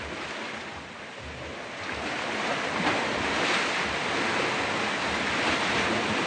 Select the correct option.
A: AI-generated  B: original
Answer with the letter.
B